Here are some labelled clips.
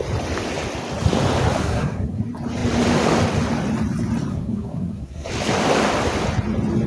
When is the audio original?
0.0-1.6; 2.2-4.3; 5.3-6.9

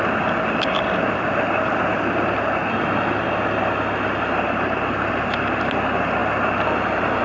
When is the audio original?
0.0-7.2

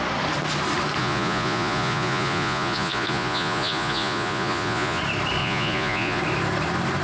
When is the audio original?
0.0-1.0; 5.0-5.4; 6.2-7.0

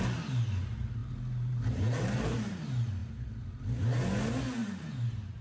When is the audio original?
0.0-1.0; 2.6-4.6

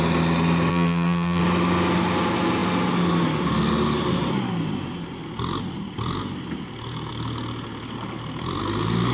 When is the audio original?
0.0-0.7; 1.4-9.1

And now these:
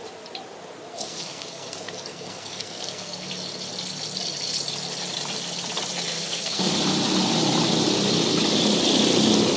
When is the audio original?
0.0-0.9; 3.3-6.1; 6.7-9.6

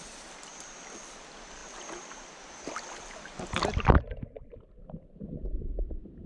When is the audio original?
none